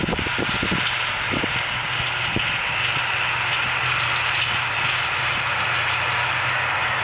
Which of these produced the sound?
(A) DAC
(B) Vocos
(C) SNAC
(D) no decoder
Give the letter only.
D